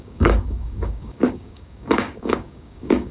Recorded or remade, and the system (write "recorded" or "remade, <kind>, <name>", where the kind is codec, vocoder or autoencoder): remade, codec, DAC